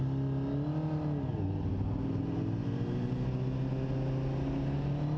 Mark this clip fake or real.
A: real